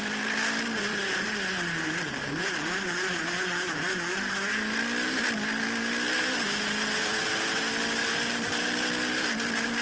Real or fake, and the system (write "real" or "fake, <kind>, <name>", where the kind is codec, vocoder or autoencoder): real